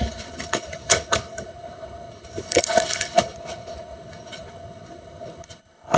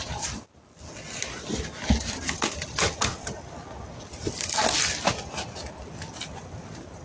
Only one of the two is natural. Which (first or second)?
second